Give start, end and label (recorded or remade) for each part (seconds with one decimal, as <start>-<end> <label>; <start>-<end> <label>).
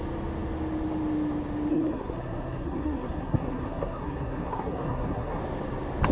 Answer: 0.0-1.7 recorded; 1.7-5.4 remade; 5.4-6.1 recorded